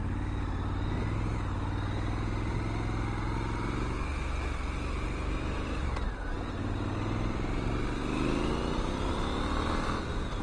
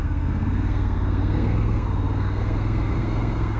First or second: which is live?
first